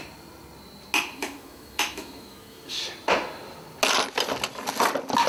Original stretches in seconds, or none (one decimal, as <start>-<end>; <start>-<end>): 0.0-1.2; 2.8-5.3